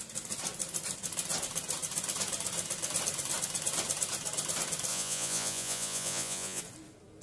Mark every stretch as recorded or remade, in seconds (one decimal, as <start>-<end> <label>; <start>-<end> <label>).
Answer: 0.0-4.9 recorded; 4.9-6.6 remade; 6.6-7.2 recorded